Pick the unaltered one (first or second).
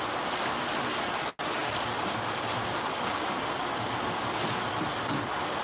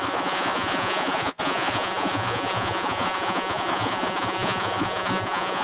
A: first